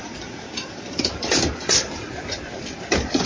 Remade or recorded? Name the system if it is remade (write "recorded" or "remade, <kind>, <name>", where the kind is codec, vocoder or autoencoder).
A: remade, vocoder, BigVGAN v2